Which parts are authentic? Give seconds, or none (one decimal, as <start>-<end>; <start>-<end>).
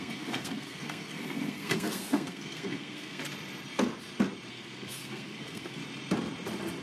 3.2-4.5; 5.8-6.8